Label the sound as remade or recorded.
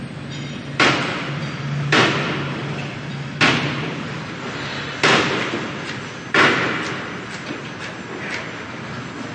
recorded